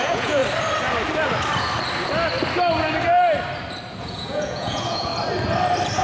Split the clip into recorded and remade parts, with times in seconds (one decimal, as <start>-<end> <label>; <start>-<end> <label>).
0.0-0.4 remade; 0.4-4.0 recorded; 4.0-5.1 remade; 5.1-6.0 recorded